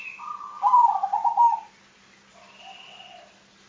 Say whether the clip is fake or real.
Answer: real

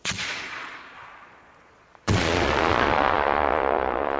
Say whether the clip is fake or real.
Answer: fake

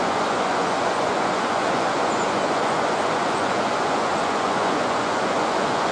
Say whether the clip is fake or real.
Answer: fake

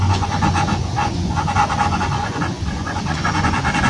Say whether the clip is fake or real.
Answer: fake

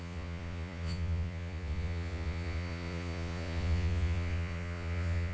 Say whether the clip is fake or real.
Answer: fake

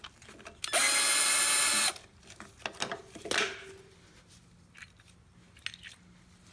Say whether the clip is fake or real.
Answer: real